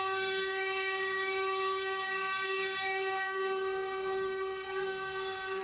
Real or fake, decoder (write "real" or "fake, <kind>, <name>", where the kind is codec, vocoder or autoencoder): fake, codec, SNAC